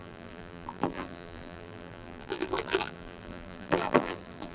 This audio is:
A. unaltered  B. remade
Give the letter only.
B